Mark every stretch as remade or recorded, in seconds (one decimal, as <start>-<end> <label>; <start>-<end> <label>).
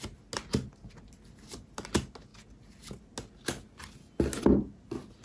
0.0-5.2 recorded